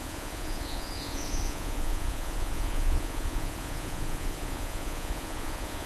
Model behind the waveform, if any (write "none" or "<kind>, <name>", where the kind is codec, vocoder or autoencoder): vocoder, Vocos